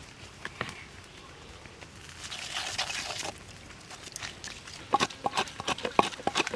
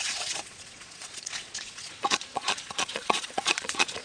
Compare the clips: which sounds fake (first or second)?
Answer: second